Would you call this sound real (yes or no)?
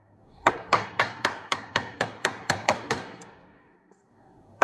no